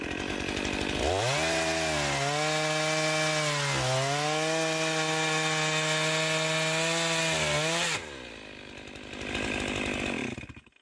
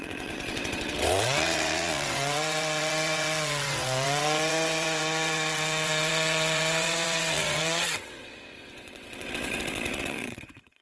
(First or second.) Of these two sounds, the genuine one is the first